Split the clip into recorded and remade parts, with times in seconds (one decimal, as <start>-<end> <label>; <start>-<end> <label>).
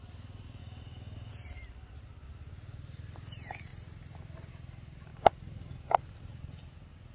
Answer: 0.0-0.6 recorded; 0.6-1.3 remade; 1.3-7.1 recorded